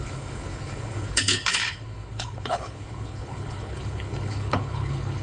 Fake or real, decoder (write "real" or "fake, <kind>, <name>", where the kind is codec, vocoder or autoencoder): fake, codec, HILCodec